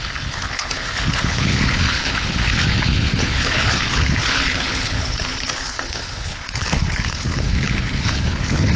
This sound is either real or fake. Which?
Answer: fake